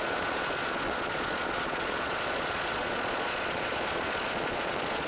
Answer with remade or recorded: remade